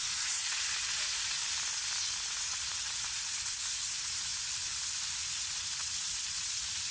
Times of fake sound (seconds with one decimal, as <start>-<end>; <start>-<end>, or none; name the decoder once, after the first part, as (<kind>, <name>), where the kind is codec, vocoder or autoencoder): 0.0-1.4 (vocoder, Vocos); 2.4-4.3; 5.3-6.9